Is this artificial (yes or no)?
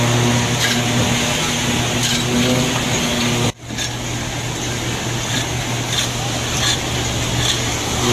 no